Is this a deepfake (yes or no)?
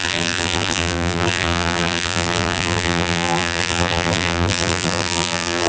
yes